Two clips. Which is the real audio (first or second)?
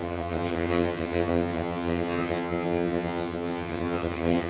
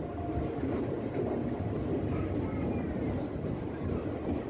second